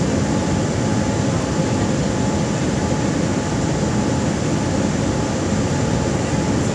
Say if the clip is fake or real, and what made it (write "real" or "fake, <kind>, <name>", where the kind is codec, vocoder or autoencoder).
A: real